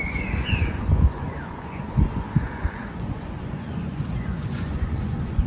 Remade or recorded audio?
remade